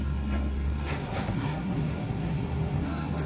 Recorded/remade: remade